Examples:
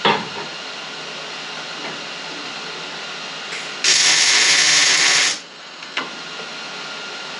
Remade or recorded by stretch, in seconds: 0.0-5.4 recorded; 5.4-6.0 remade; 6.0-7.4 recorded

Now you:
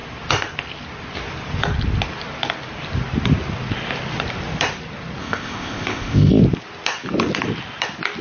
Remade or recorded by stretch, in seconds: 0.0-5.2 recorded; 5.2-6.4 remade; 6.4-8.2 recorded

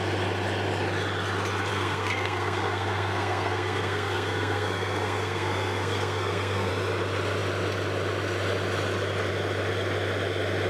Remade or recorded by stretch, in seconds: 0.0-1.7 recorded; 1.7-6.7 remade; 6.7-10.7 recorded

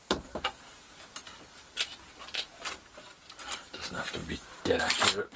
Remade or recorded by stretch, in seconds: 0.0-5.4 recorded

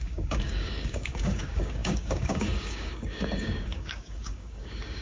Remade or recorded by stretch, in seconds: 0.0-5.0 remade

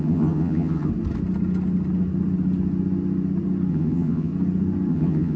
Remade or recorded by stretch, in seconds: 0.0-0.9 remade; 0.9-3.7 recorded; 3.7-4.3 remade; 4.3-4.9 recorded; 4.9-5.4 remade

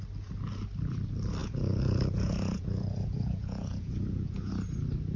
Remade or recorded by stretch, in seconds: 0.0-1.4 recorded; 1.4-4.5 remade; 4.5-5.2 recorded

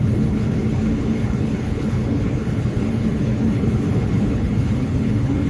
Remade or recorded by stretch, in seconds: 0.0-5.5 remade